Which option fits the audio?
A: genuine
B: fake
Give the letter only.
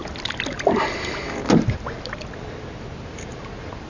A